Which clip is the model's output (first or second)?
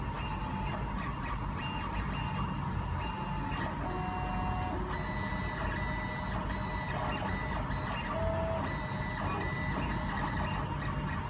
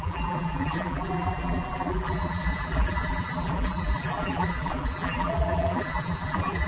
second